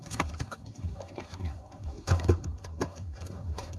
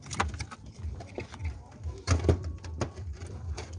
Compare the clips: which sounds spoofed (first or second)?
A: first